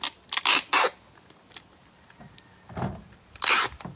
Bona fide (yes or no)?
yes